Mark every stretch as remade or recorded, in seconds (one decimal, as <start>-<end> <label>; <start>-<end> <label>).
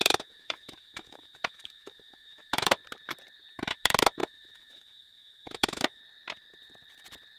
0.0-2.8 remade; 2.8-3.5 recorded; 3.5-6.0 remade; 6.0-7.4 recorded